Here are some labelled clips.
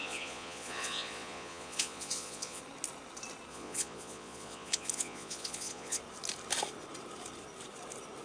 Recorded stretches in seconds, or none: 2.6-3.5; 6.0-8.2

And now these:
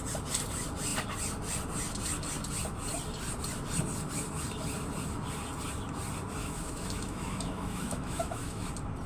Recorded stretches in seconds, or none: 0.0-6.4; 8.7-9.1